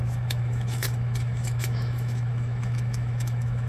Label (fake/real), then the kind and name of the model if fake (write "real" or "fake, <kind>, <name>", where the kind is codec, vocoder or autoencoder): fake, autoencoder, DAC-VAE